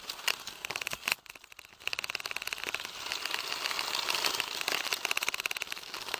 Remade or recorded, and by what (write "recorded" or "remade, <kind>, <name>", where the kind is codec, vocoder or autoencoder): recorded